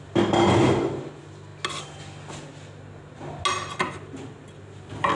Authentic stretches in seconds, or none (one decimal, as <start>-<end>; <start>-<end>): 0.0-5.1

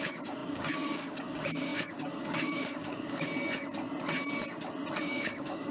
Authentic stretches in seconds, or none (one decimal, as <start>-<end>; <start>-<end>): 3.3-5.0

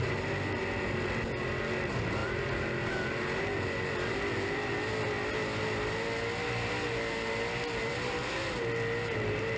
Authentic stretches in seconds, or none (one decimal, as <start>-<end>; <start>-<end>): 0.0-9.6

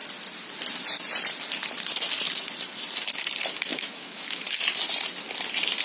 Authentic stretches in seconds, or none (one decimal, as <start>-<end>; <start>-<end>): 0.0-3.7; 4.4-5.8

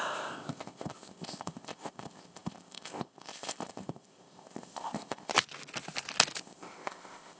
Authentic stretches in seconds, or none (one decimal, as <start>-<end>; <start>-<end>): 5.3-6.4

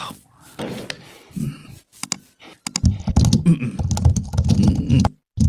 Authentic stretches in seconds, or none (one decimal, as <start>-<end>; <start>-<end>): 0.0-5.5

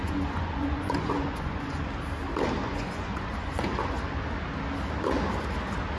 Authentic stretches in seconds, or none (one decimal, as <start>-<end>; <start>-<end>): 1.9-2.6; 4.1-6.0